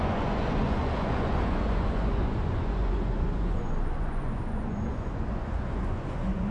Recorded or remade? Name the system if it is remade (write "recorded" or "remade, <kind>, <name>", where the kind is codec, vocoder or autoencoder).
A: remade, vocoder, Vocos